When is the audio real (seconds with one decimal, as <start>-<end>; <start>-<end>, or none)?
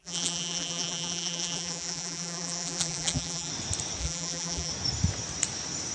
3.5-4.0; 4.7-5.9